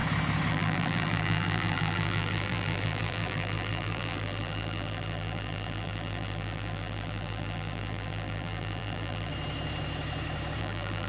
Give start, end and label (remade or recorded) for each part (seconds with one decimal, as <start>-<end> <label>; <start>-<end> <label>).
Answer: 0.0-0.5 recorded; 0.5-9.3 remade; 9.3-10.6 recorded; 10.6-11.1 remade